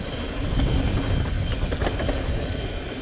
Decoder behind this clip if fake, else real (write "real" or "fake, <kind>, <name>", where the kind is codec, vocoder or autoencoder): real